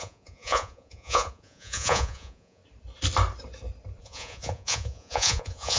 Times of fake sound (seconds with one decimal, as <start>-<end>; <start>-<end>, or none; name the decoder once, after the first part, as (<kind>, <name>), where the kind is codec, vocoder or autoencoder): 0.0-2.6 (vocoder, Vocos); 4.0-5.8